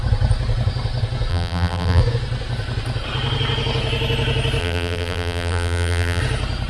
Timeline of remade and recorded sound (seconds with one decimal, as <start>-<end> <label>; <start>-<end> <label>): 0.0-1.3 recorded; 1.3-2.0 remade; 2.0-4.6 recorded; 4.6-6.2 remade; 6.2-6.7 recorded